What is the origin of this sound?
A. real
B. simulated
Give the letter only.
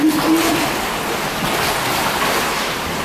A